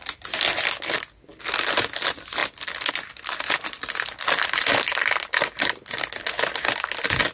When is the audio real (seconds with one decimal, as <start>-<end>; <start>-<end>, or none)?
0.0-7.3

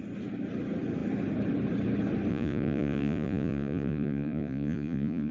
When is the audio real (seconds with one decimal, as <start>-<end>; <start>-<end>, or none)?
0.0-2.3

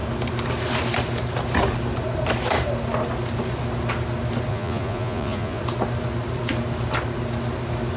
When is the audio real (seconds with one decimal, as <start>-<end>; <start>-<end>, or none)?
0.0-4.5; 5.6-8.0

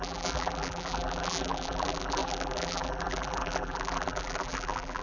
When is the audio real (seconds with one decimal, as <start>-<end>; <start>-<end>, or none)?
none

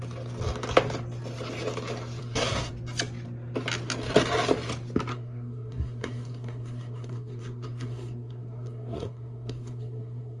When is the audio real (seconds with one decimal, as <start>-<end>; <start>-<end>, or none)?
0.0-2.2; 2.7-5.1

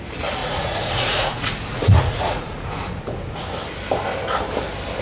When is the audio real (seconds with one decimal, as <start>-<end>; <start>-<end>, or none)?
0.0-0.4; 3.4-5.0